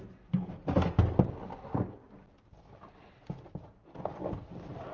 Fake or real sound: real